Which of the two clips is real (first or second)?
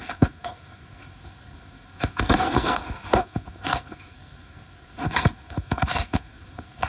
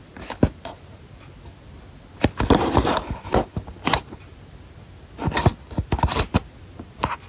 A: second